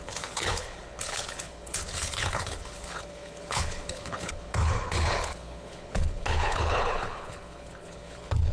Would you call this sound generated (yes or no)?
yes